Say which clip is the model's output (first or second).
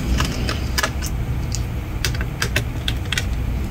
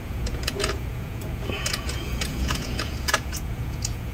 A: second